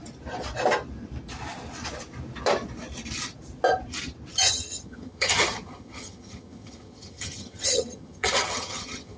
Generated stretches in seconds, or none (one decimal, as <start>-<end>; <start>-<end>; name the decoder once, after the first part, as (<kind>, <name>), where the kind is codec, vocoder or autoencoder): 4.3-9.2 (vocoder, HiFi-GAN)